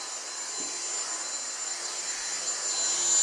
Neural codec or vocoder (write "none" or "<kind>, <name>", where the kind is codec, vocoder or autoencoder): none